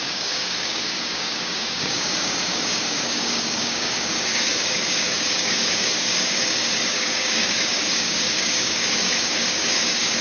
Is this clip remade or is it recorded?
remade